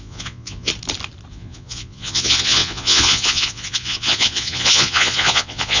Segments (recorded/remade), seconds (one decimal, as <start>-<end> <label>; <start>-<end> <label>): 0.0-0.7 remade; 0.7-1.3 recorded; 1.3-5.8 remade